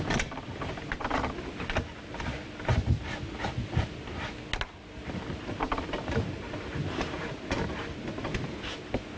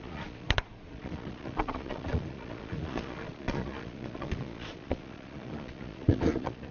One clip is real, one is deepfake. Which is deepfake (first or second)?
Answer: second